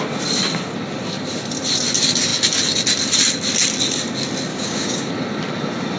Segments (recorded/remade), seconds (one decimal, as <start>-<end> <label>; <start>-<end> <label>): 0.0-4.5 recorded; 4.5-5.1 remade; 5.1-6.0 recorded